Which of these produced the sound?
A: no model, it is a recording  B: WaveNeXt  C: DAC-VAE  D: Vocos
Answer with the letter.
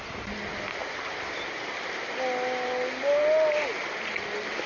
A